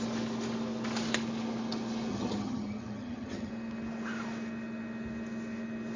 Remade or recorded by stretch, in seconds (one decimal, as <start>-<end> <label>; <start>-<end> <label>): 0.0-2.1 recorded; 2.1-3.5 remade; 3.5-6.0 recorded